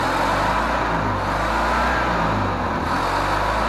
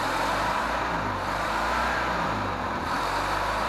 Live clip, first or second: first